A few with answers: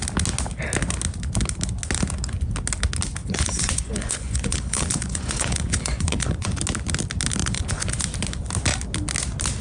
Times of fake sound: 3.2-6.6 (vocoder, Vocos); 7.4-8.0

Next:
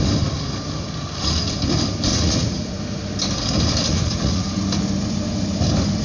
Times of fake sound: 2.1-2.8 (vocoder, Vocos); 3.9-4.5

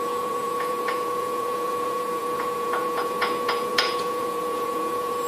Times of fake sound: 0.0-5.3 (vocoder, Vocos)

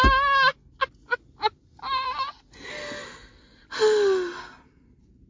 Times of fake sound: none

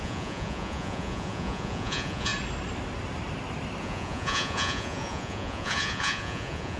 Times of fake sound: 0.0-2.3 (vocoder, Vocos); 3.8-6.8